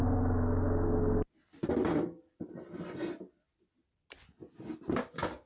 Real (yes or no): yes